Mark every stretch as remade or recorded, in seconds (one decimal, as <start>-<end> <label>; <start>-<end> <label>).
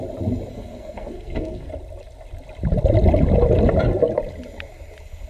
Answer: 0.0-0.5 recorded; 0.5-1.7 remade; 1.7-5.3 recorded